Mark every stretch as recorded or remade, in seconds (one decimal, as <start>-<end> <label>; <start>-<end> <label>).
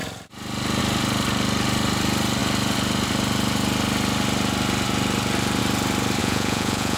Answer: 0.0-6.2 recorded; 6.2-7.0 remade